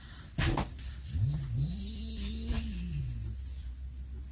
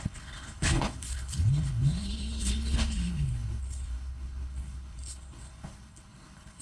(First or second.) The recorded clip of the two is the first